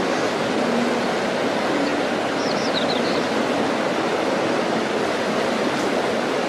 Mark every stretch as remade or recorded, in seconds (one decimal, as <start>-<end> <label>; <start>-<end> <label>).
0.0-6.5 recorded